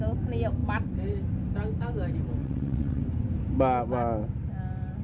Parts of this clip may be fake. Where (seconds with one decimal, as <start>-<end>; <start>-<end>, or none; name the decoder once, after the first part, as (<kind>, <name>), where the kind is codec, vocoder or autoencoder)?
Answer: 2.4-3.0 (vocoder, WaveNeXt)

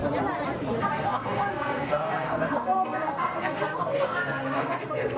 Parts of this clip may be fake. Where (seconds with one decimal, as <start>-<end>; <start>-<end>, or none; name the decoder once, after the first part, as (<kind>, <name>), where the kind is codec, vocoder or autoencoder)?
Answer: 0.8-5.2 (codec, SNAC)

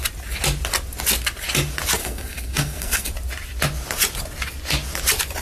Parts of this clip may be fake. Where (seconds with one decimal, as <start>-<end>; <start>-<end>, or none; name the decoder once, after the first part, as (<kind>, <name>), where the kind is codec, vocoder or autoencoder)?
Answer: 2.0-3.1 (codec, SNAC)

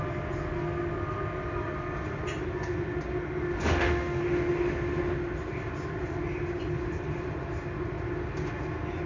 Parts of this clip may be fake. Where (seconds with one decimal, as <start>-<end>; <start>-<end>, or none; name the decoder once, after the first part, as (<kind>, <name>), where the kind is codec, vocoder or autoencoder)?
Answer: 3.6-4.2 (autoencoder, DAC-VAE)

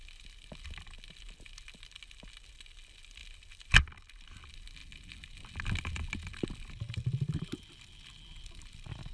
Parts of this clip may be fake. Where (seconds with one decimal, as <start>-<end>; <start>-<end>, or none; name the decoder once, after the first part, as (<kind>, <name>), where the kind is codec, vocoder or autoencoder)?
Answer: none